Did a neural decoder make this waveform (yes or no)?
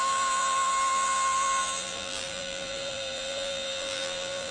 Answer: yes